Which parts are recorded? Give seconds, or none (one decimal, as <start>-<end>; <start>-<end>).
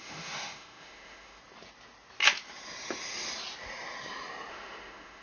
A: 1.4-4.5